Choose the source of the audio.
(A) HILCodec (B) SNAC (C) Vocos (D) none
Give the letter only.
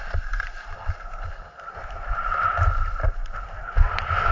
D